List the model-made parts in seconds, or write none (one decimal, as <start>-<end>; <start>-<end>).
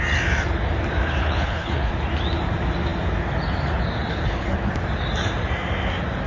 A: 1.2-1.9; 4.1-4.7